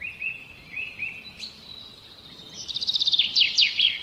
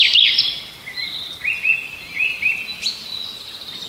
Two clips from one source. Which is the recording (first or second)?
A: second